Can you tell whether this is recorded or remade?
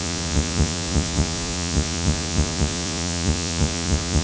remade